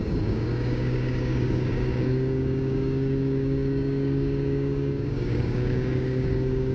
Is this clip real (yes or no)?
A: no